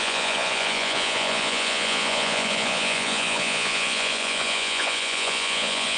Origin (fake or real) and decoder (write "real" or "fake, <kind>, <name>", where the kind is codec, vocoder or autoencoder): fake, vocoder, Vocos